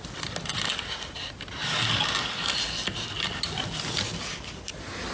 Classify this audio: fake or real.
real